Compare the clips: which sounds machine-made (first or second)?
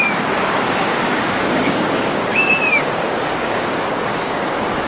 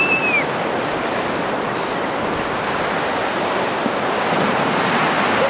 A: first